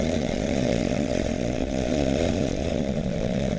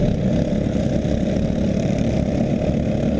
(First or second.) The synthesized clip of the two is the first